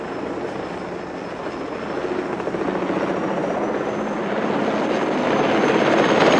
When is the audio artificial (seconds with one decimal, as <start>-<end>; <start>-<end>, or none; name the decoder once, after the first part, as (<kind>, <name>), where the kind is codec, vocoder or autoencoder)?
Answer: none

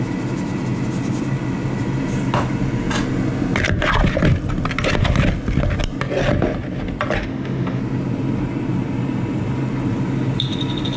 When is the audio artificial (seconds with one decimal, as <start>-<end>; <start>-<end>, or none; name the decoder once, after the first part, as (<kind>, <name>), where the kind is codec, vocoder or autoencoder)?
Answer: 7.2-7.8 (autoencoder, DAC-VAE)

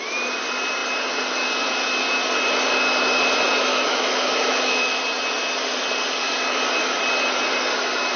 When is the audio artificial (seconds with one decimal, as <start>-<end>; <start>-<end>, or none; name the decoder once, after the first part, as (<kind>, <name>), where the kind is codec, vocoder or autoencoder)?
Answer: 3.7-5.0 (autoencoder, DAC-VAE)

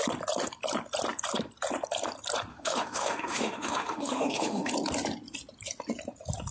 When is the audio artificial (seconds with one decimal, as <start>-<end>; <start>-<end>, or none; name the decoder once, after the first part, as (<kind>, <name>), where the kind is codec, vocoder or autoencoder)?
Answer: 2.5-4.7 (autoencoder, DAC-VAE)